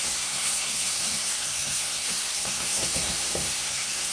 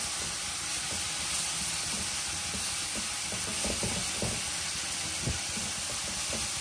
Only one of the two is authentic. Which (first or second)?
second